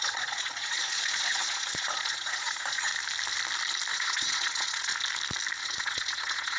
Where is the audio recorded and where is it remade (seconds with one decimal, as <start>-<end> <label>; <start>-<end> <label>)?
0.0-2.9 remade; 2.9-3.9 recorded; 3.9-4.9 remade; 4.9-5.6 recorded; 5.6-6.6 remade